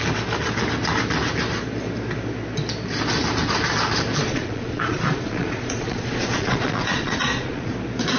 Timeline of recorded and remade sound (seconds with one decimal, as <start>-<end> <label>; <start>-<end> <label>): 0.0-4.2 recorded; 4.2-7.7 remade; 7.7-8.2 recorded